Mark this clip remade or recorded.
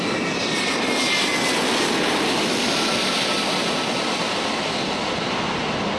recorded